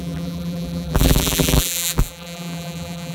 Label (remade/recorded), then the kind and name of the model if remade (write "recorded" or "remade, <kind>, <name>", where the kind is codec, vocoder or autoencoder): remade, vocoder, BigVGAN v2